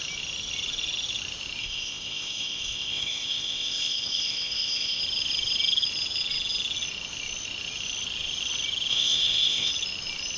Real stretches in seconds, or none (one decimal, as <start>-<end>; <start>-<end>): 0.0-1.6; 5.0-8.9; 9.7-10.4